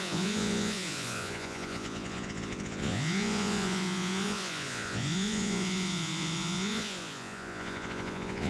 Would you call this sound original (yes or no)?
no